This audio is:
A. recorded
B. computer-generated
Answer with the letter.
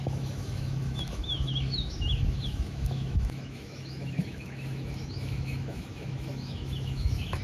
B